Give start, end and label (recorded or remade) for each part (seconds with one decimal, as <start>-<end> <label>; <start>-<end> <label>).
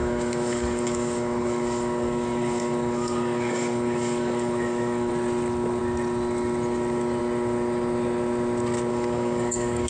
0.0-5.1 remade; 5.1-8.9 recorded; 8.9-9.9 remade